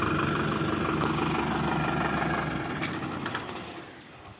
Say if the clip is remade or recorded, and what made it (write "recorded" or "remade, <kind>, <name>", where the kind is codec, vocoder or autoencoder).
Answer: recorded